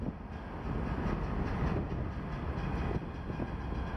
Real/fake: real